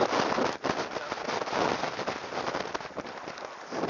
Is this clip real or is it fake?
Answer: real